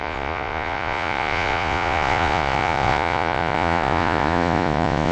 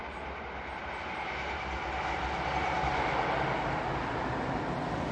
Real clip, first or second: second